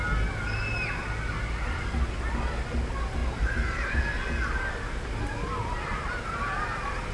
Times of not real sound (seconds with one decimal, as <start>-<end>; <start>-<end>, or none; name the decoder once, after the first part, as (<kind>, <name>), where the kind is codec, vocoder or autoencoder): 3.2-4.0 (vocoder, BigVGAN v2)